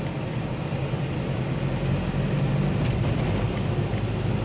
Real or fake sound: real